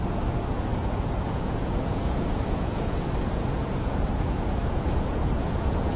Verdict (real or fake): fake